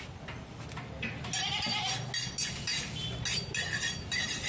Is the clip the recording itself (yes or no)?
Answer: yes